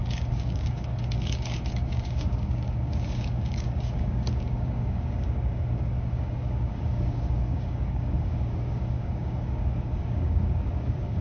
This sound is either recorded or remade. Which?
remade